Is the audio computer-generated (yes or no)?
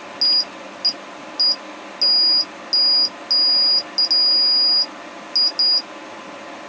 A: no